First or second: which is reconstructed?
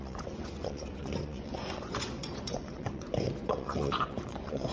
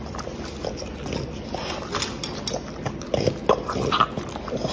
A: first